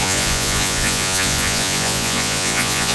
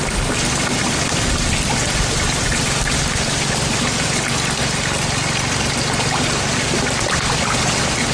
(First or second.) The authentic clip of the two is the second